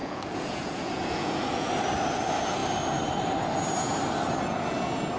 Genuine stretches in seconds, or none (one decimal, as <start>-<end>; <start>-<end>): 1.7-5.2